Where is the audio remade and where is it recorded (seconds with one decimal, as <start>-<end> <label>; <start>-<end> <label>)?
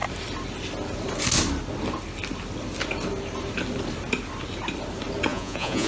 0.0-5.3 recorded; 5.3-5.9 remade